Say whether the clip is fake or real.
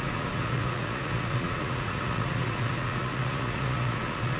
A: fake